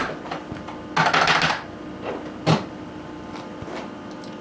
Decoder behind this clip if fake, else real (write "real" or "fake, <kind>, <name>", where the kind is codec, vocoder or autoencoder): real